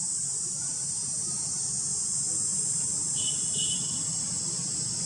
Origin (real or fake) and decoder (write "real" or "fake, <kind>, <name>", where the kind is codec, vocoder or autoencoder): fake, vocoder, BigVGAN v2